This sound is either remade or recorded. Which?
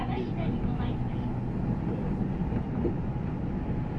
recorded